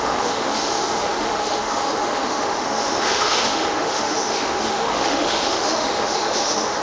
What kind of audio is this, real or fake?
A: fake